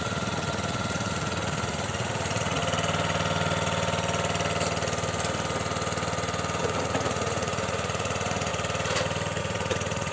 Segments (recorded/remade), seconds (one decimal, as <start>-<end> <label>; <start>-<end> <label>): 0.0-2.6 remade; 2.6-6.6 recorded; 6.6-8.5 remade; 8.5-9.4 recorded; 9.4-10.1 remade